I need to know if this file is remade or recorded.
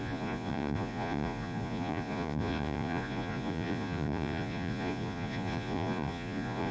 remade